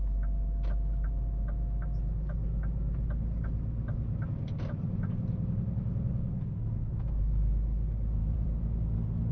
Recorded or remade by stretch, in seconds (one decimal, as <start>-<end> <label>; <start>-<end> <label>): 0.0-8.2 recorded; 8.2-9.3 remade